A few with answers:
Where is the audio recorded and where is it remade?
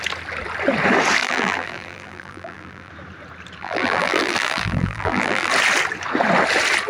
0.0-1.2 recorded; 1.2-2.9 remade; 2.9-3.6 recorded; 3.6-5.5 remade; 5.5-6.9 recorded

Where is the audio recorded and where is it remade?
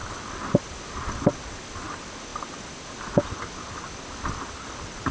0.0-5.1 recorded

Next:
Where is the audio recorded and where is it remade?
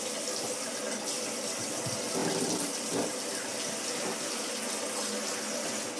0.0-6.0 recorded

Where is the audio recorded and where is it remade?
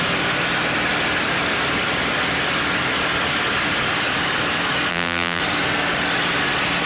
0.0-4.9 recorded; 4.9-5.4 remade; 5.4-6.9 recorded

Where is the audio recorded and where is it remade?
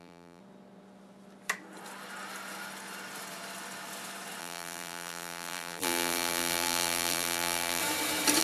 0.0-0.4 remade; 0.4-4.4 recorded; 4.4-7.8 remade; 7.8-8.4 recorded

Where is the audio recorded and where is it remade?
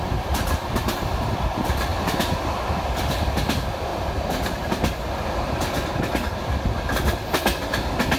0.0-3.9 remade; 3.9-8.2 recorded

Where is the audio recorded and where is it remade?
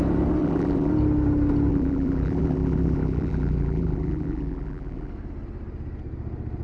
0.0-0.4 recorded; 0.4-0.9 remade; 0.9-1.7 recorded; 1.7-5.1 remade; 5.1-6.6 recorded